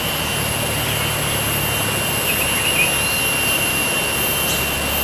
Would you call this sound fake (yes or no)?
no